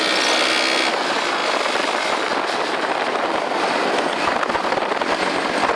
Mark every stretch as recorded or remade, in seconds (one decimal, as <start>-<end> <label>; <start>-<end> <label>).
0.0-5.8 recorded